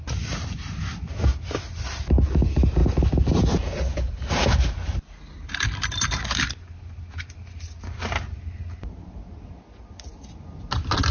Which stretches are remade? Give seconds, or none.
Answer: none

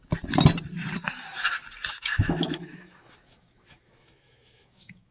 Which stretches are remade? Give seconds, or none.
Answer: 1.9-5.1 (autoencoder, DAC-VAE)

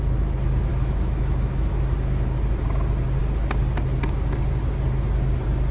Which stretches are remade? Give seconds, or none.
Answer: 0.7-1.7 (autoencoder, DAC-VAE)

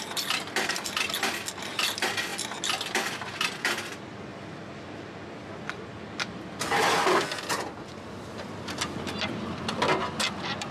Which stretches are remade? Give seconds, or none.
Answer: none

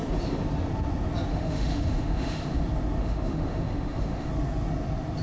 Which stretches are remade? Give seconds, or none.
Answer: 1.3-2.6 (autoencoder, DAC-VAE); 3.0-4.3

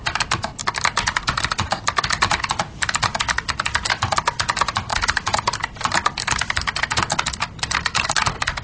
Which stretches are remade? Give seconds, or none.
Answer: none

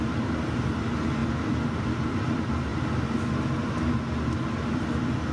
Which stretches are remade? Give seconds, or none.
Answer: none